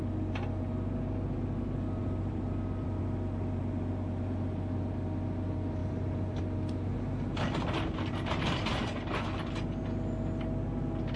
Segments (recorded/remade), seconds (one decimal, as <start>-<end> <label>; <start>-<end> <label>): 0.0-2.0 recorded; 2.0-3.0 remade; 3.0-5.8 recorded; 5.8-6.4 remade; 6.4-11.2 recorded